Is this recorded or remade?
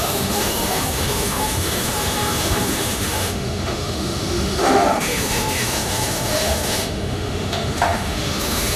remade